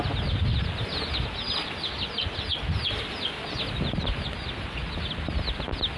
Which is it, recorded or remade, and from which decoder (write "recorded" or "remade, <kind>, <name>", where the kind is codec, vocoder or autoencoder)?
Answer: recorded